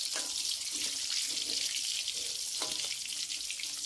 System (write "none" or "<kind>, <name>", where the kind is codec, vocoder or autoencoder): none